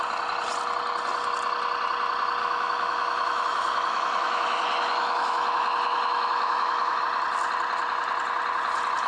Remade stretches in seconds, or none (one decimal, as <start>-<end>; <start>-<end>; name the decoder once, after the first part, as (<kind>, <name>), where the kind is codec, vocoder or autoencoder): 2.4-7.0 (autoencoder, DAC-VAE)